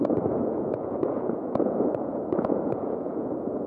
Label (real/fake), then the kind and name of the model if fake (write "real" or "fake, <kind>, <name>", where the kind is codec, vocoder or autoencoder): fake, vocoder, Vocos